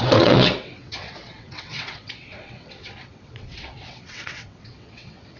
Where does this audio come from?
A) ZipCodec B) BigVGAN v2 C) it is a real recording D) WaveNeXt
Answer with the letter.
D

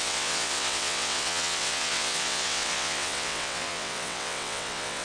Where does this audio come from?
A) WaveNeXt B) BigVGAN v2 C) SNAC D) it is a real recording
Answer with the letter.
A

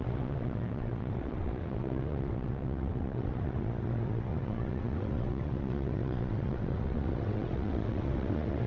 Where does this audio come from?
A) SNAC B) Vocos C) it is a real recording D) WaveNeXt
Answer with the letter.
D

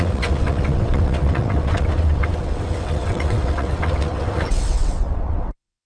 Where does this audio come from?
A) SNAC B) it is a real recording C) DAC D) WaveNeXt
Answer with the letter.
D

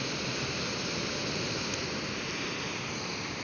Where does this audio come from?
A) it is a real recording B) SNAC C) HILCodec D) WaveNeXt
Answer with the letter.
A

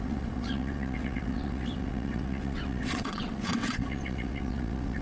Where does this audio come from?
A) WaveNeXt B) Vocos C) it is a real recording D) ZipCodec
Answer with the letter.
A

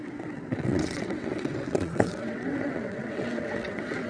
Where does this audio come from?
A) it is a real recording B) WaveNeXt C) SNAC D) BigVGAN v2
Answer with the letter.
B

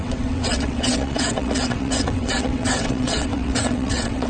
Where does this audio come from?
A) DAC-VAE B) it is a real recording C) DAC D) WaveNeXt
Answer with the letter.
D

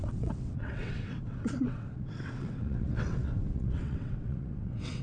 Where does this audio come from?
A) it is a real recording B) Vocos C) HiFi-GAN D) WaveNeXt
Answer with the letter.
D